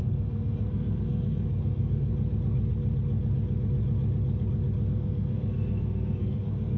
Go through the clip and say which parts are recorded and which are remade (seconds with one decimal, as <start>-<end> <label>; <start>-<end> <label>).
0.0-2.1 remade; 2.1-4.9 recorded; 4.9-6.8 remade